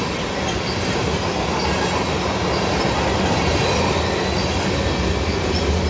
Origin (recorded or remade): recorded